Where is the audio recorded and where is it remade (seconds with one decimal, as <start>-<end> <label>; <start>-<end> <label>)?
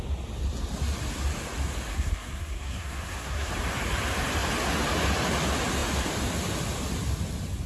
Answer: 0.0-1.9 recorded; 1.9-3.5 remade; 3.5-7.7 recorded